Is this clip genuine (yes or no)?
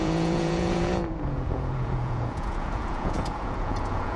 no